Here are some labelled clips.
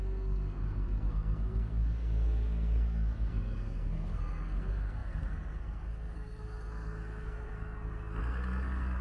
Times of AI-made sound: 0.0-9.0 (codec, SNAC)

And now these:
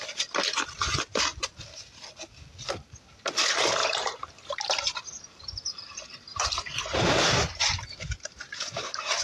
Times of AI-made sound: 1.3-1.8 (vocoder, BigVGAN v2); 3.8-9.2

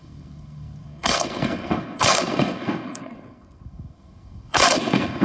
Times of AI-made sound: 0.0-5.2 (codec, SNAC)

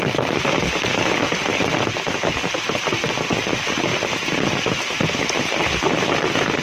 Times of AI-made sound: 1.5-2.6 (vocoder, BigVGAN v2)

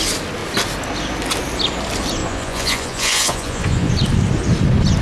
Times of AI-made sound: 2.2-3.9 (vocoder, Vocos)

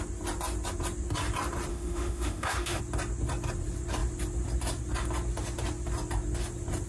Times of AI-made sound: 1.7-2.8 (autoencoder, DAC-VAE)

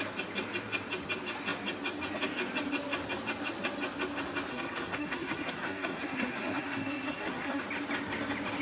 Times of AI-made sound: 4.5-7.6 (codec, SNAC)